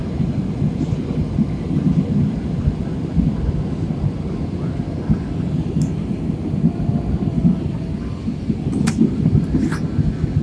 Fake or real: real